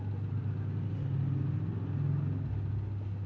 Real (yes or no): yes